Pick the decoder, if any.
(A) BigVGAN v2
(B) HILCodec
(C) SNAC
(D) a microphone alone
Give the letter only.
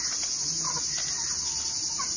D